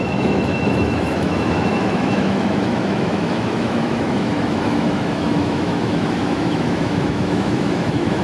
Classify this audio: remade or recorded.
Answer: remade